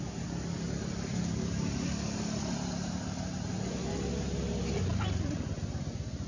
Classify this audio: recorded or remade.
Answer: recorded